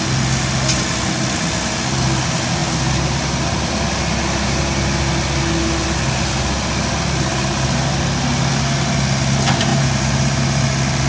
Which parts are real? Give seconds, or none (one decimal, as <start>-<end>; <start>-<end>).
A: 0.0-9.7; 10.6-11.1